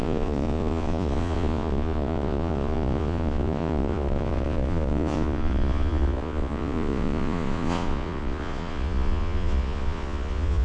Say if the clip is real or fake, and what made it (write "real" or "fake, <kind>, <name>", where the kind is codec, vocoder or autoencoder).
fake, vocoder, Vocos